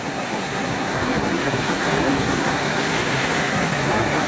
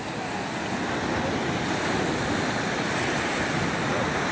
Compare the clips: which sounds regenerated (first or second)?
first